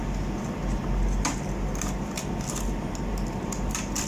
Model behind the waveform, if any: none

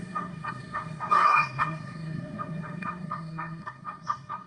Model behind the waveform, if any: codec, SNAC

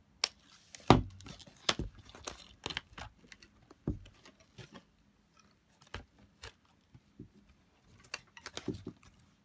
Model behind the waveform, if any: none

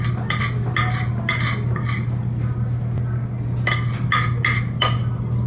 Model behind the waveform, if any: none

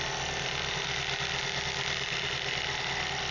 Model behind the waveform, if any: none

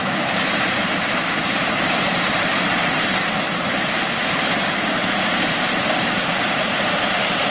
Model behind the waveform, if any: vocoder, BigVGAN v2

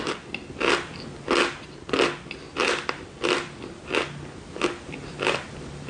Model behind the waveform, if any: none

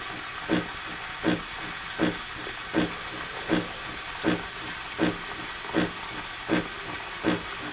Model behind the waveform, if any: none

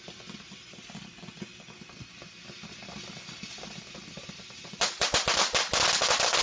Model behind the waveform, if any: none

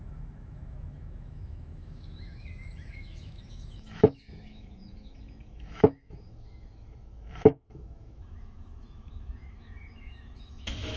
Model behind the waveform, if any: autoencoder, DAC-VAE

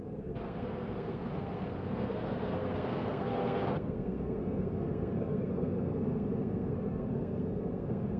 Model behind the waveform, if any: codec, SNAC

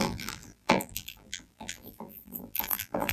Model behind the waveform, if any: vocoder, BigVGAN v2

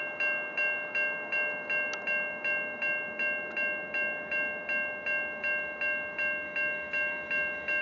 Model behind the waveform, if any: none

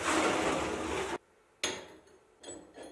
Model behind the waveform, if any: none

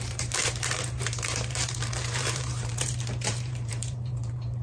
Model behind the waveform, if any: vocoder, BigVGAN v2